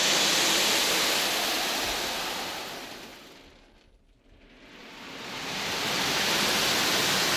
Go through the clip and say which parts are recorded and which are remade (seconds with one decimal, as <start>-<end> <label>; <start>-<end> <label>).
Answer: 0.0-7.4 recorded